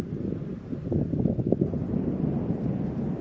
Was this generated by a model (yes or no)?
no